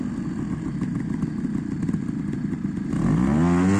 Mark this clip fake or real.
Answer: real